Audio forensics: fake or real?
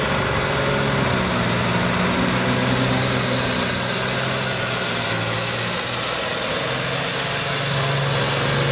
real